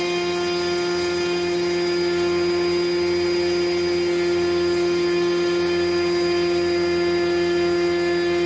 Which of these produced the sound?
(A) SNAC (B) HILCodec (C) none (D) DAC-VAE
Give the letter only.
C